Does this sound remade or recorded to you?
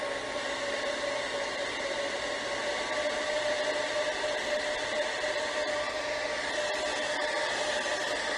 recorded